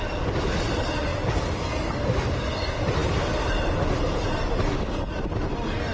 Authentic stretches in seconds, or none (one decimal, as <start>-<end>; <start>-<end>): 0.0-5.9